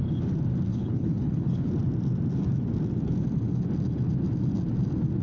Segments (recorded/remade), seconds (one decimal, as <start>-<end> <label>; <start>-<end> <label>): 0.0-0.7 recorded; 0.7-1.7 remade; 1.7-5.2 recorded

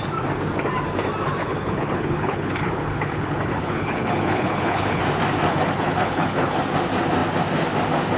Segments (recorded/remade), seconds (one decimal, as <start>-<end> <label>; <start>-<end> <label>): 0.0-1.4 recorded; 1.4-5.0 remade; 5.0-5.5 recorded; 5.5-6.6 remade; 6.6-8.2 recorded

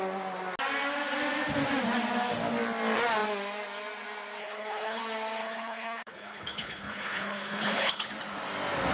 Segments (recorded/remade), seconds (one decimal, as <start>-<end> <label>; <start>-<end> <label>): 0.0-4.4 recorded; 4.4-5.0 remade; 5.0-5.4 recorded; 5.4-8.1 remade; 8.1-8.9 recorded

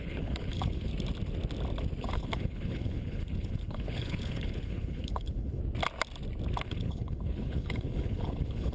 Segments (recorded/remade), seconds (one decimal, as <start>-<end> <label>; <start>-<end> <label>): 0.0-0.9 remade; 0.9-2.0 recorded; 2.0-5.6 remade; 5.6-6.6 recorded; 6.6-8.7 remade

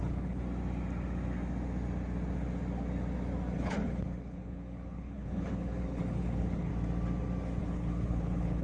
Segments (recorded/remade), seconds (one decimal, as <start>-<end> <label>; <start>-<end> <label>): 0.0-0.4 remade; 0.4-3.5 recorded; 3.5-6.7 remade; 6.7-7.6 recorded; 7.6-8.6 remade